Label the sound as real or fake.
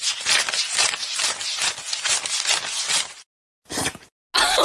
real